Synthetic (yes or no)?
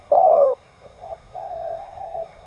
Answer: yes